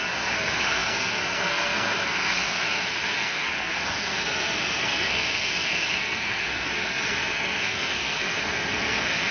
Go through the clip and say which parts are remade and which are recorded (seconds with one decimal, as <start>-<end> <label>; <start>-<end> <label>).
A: 0.0-9.3 remade